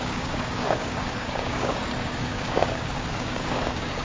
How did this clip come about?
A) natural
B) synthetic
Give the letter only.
B